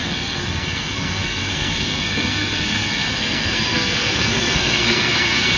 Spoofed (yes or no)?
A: yes